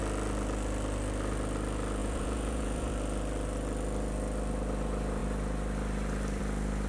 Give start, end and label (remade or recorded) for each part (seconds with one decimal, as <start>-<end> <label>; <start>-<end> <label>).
0.0-2.0 recorded; 2.0-2.9 remade; 2.9-6.9 recorded